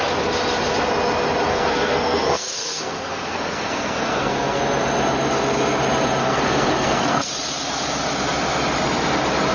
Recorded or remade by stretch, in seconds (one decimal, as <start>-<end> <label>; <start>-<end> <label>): 0.0-1.5 recorded; 1.5-4.6 remade; 4.6-6.2 recorded; 6.2-7.3 remade; 7.3-9.5 recorded